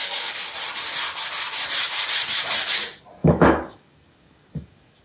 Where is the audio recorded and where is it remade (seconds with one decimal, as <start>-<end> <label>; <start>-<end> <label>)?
0.0-0.5 remade; 0.5-3.2 recorded; 3.2-5.0 remade